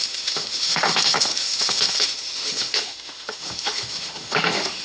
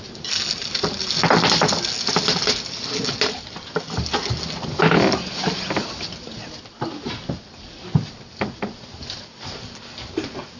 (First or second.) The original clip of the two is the second